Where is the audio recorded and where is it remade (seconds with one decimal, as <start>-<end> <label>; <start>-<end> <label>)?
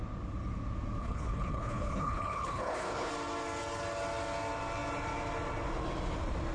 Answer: 0.0-1.0 recorded; 1.0-3.1 remade; 3.1-6.5 recorded